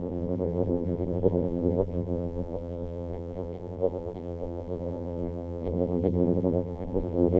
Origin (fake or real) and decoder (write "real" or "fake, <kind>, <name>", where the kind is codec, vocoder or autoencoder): fake, vocoder, BigVGAN v2